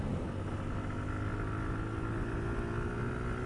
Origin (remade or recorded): recorded